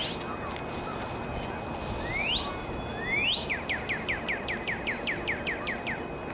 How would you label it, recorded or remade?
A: recorded